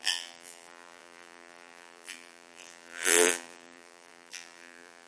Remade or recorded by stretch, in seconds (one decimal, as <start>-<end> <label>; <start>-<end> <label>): 0.0-5.1 remade